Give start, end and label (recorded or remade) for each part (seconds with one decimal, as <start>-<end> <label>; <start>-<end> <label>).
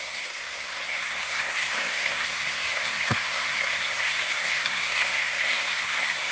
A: 0.0-6.3 remade